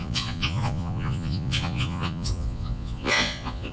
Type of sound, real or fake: fake